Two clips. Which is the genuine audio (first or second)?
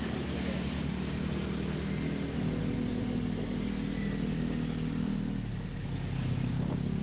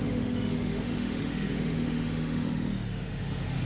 first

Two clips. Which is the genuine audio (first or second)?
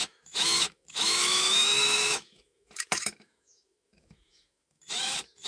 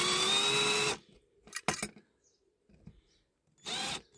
second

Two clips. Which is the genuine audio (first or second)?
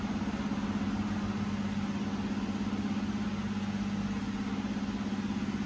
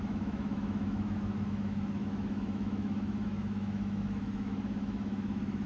first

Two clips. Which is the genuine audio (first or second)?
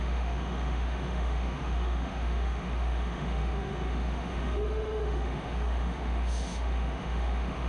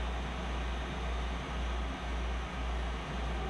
second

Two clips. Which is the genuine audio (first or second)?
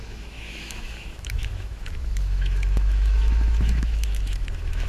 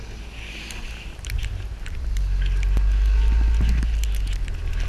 second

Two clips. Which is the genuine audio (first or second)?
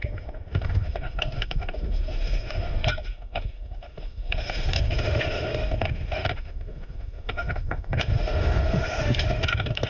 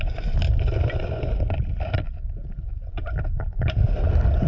second